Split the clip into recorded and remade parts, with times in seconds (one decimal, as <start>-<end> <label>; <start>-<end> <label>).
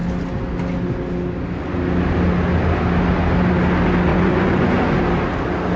0.0-4.1 recorded; 4.1-5.0 remade; 5.0-5.8 recorded